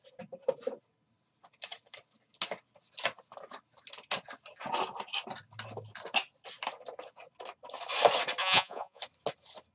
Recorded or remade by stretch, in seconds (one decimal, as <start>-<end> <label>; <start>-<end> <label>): 0.0-8.4 recorded; 8.4-9.0 remade; 9.0-9.7 recorded